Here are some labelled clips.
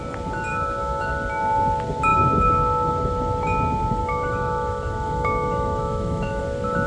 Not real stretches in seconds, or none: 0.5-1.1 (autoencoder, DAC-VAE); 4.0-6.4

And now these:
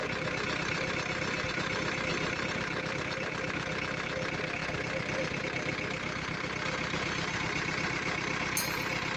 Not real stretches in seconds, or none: 2.1-3.3 (vocoder, BigVGAN v2); 4.6-5.4

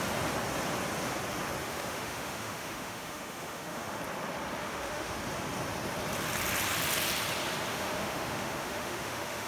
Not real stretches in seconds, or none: 1.6-4.0 (autoencoder, DAC-VAE); 4.6-5.2; 7.7-9.5